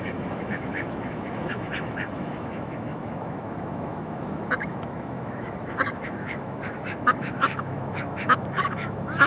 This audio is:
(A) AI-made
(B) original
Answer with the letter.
A